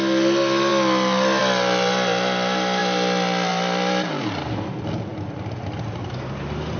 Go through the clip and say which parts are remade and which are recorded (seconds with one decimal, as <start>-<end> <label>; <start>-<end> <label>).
0.0-6.8 recorded